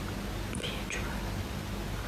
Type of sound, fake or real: real